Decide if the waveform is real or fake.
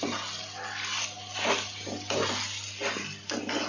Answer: real